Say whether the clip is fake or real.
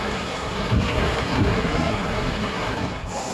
fake